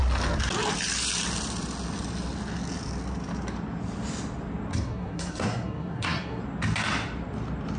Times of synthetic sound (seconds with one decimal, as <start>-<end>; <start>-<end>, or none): 4.7-6.4